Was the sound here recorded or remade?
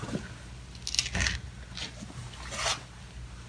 recorded